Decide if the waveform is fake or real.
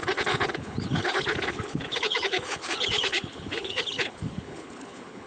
fake